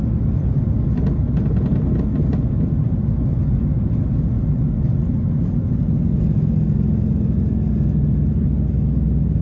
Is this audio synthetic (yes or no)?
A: no